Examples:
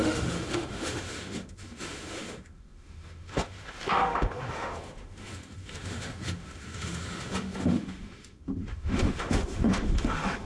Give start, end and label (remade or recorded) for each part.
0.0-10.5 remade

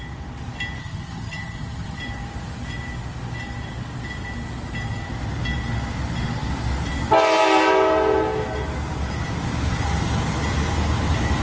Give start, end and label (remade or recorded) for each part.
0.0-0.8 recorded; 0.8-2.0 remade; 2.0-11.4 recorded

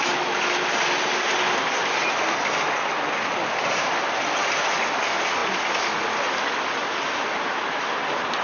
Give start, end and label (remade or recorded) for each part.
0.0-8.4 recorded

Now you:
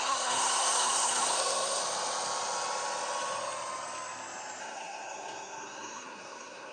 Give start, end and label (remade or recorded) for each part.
0.0-1.8 remade; 1.8-4.6 recorded; 4.6-6.7 remade

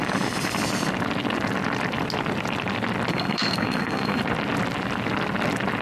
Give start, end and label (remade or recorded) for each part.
0.0-3.1 recorded; 3.1-4.2 remade; 4.2-5.8 recorded